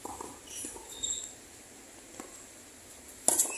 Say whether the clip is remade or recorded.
recorded